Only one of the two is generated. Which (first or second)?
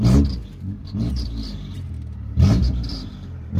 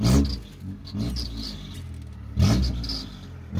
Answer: first